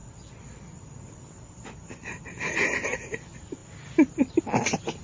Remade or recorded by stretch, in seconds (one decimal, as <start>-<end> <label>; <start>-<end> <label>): 0.0-5.0 recorded